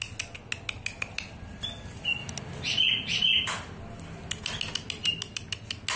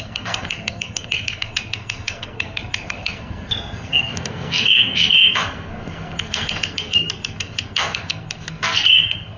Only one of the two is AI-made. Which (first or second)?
second